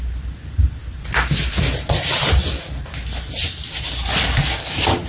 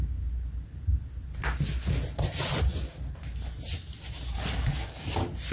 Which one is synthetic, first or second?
first